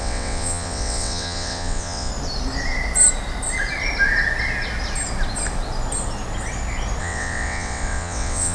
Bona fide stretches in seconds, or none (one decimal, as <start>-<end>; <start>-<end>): 2.1-7.0